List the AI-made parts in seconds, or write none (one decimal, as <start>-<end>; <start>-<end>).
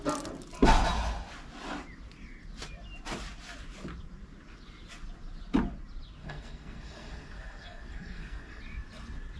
6.2-8.6